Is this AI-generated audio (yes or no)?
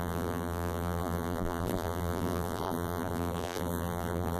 yes